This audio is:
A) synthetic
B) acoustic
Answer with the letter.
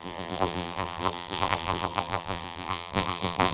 A